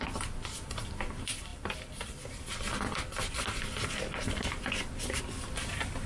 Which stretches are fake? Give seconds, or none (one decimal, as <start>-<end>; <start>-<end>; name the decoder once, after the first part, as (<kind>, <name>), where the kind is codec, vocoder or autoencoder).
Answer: 0.0-6.1 (vocoder, BigVGAN v2)

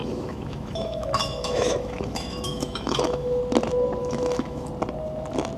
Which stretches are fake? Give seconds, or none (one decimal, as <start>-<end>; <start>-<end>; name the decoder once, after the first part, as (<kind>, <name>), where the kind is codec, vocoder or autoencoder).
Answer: 0.0-3.4 (autoencoder, DAC-VAE); 4.0-4.7

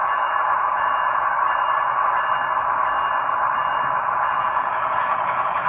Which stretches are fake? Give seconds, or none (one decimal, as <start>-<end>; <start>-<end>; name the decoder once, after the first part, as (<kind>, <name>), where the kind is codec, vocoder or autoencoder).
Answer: 0.0-1.3 (vocoder, Vocos); 3.9-5.7